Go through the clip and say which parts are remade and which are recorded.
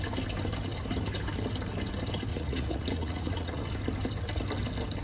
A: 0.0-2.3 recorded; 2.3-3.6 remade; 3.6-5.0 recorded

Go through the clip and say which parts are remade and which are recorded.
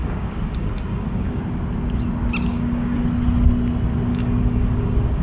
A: 0.0-1.4 remade; 1.4-2.5 recorded; 2.5-3.0 remade; 3.0-4.1 recorded; 4.1-5.2 remade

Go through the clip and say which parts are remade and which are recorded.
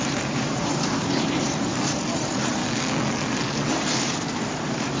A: 0.0-2.6 remade; 2.6-3.7 recorded; 3.7-5.0 remade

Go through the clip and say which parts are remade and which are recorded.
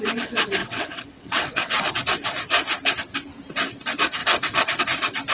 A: 0.0-0.6 recorded; 0.6-1.9 remade; 1.9-4.2 recorded; 4.2-4.8 remade; 4.8-5.3 recorded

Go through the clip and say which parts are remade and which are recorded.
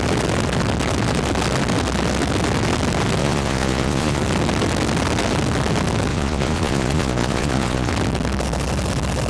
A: 0.0-3.2 recorded; 3.2-4.2 remade; 4.2-6.1 recorded; 6.1-7.9 remade; 7.9-9.3 recorded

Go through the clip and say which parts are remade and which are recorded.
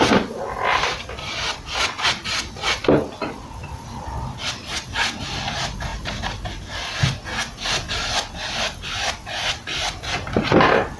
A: 0.0-11.0 recorded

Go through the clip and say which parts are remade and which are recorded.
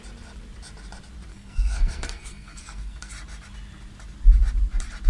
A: 0.0-1.3 recorded; 1.3-3.1 remade; 3.1-5.1 recorded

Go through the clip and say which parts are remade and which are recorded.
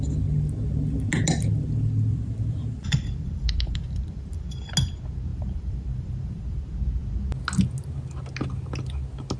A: 0.0-2.1 recorded; 2.1-4.7 remade; 4.7-5.3 recorded; 5.3-6.6 remade; 6.6-9.4 recorded